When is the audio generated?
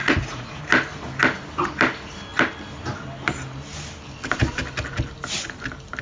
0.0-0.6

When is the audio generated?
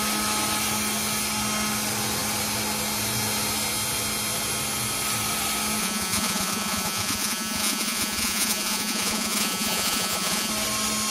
5.8-10.5